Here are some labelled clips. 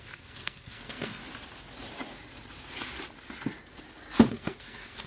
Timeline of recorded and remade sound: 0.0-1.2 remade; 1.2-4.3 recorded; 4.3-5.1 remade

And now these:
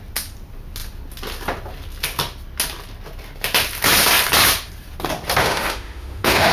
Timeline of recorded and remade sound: 0.0-5.4 recorded; 5.4-6.5 remade

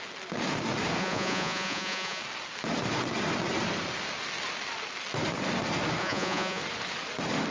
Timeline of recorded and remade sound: 0.0-1.0 recorded; 1.0-2.2 remade; 2.2-6.0 recorded; 6.0-6.6 remade; 6.6-7.5 recorded

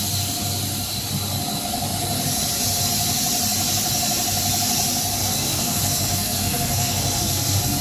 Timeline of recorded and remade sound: 0.0-5.2 recorded; 5.2-7.8 remade

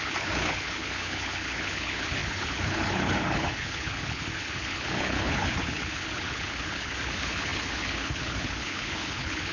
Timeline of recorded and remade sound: 0.0-9.5 remade

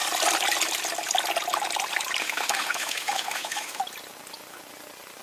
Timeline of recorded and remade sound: 0.0-2.2 recorded; 2.2-3.8 remade; 3.8-5.2 recorded

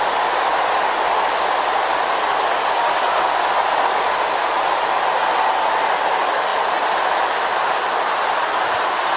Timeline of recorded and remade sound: 0.0-9.2 recorded

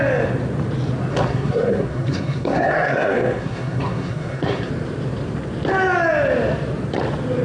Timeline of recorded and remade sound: 0.0-1.1 recorded; 1.1-4.7 remade; 4.7-7.4 recorded